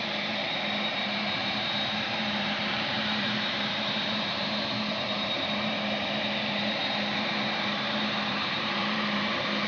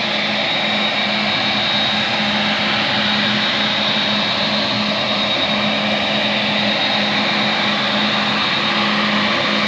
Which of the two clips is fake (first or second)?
first